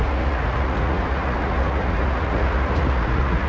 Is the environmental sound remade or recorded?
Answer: remade